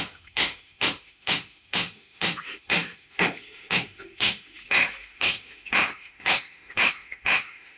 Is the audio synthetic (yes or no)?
yes